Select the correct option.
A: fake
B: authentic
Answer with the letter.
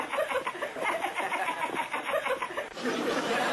B